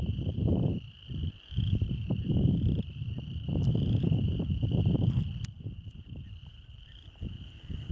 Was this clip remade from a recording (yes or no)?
no